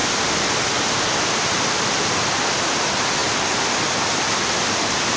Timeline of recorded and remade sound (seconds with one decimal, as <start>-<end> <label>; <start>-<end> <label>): 0.0-5.2 recorded